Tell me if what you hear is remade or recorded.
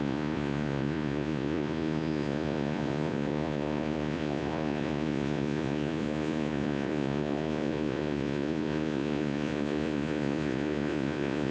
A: remade